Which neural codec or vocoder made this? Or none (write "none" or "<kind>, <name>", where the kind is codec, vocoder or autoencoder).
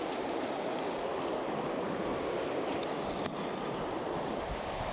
none